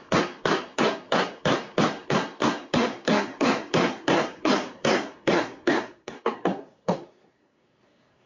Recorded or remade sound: remade